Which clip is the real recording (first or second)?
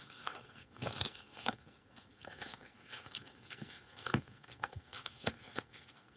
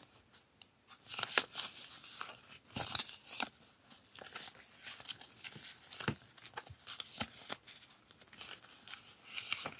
second